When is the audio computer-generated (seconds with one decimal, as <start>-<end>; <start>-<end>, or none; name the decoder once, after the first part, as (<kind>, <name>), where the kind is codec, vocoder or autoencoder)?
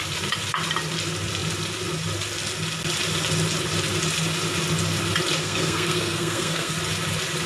5.4-6.7 (codec, SNAC)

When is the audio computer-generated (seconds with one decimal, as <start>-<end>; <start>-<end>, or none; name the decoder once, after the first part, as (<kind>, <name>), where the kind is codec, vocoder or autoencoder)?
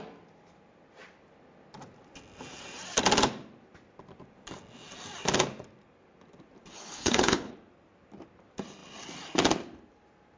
6.7-7.5 (codec, HILCodec)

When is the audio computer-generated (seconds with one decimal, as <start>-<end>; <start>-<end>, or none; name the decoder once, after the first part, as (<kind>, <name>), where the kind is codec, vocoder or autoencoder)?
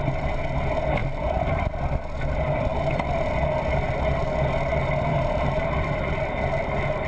1.0-1.7 (vocoder, BigVGAN v2); 5.1-6.0